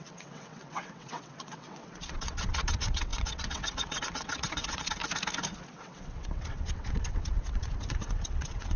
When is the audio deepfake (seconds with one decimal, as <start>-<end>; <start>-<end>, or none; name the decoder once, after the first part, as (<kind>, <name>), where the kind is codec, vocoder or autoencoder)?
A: 0.0-5.0 (vocoder, WaveNeXt); 5.7-8.8